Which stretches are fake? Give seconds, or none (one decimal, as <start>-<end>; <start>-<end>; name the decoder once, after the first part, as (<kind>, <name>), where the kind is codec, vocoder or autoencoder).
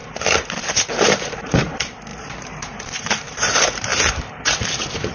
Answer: 0.0-5.1 (vocoder, BigVGAN v2)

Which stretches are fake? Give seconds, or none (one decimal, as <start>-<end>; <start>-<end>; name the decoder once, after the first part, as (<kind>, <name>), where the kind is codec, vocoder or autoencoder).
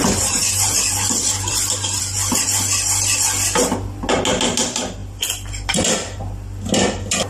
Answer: 0.4-2.0 (vocoder, BigVGAN v2); 5.0-7.3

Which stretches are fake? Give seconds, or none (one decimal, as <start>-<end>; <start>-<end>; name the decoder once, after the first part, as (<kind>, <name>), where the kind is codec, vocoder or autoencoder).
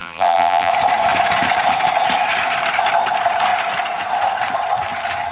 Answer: 0.0-0.7 (vocoder, BigVGAN v2)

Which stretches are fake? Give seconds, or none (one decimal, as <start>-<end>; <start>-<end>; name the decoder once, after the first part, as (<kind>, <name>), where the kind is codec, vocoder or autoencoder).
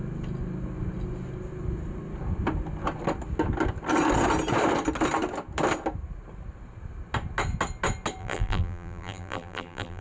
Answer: 8.2-10.0 (vocoder, BigVGAN v2)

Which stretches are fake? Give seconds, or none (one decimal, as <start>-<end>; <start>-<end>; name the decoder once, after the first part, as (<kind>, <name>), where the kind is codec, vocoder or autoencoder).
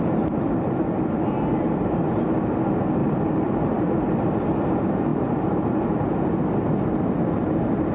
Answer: 3.0-3.9 (vocoder, BigVGAN v2)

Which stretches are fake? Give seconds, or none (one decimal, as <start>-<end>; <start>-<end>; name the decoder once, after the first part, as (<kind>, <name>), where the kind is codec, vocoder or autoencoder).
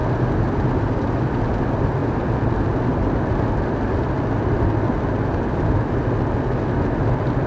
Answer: none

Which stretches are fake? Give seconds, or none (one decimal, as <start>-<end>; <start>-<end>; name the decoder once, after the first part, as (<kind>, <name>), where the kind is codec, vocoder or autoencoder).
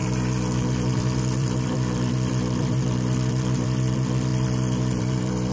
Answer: 0.0-4.3 (vocoder, BigVGAN v2); 5.0-5.5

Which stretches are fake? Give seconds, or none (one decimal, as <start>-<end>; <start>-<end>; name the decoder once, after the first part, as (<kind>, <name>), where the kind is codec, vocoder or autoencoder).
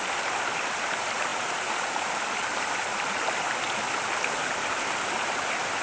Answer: 0.0-1.3 (vocoder, BigVGAN v2); 4.5-5.8